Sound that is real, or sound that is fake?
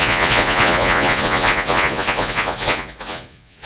fake